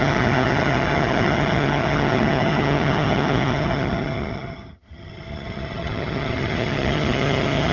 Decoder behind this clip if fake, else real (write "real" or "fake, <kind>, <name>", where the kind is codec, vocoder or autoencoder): fake, vocoder, HiFi-GAN